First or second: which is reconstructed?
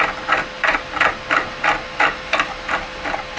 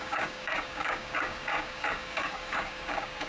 second